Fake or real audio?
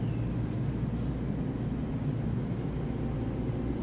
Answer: real